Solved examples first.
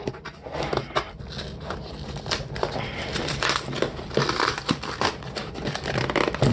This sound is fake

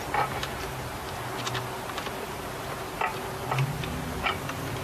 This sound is real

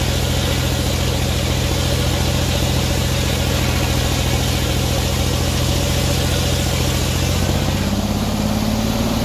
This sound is real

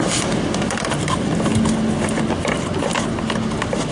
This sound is real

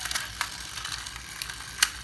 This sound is fake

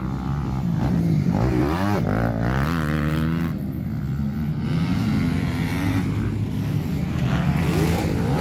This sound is real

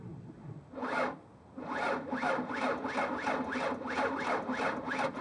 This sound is real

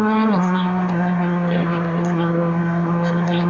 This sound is fake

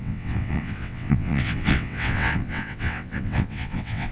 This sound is fake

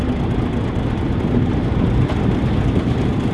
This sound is fake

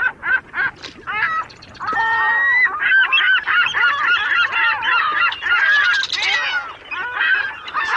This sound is real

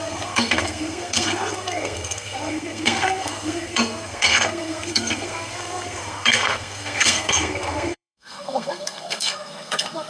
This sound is fake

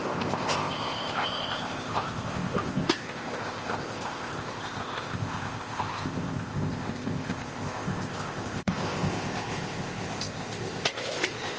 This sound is fake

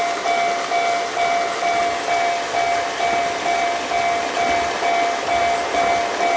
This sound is real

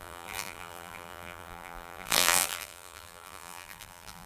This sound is fake